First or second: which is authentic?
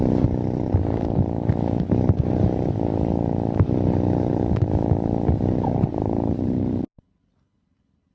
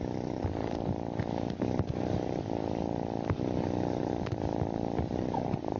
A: first